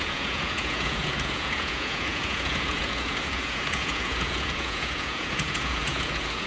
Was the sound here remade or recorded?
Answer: remade